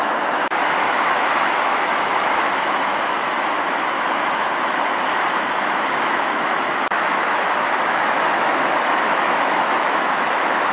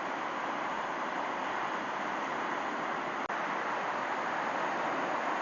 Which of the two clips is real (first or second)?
second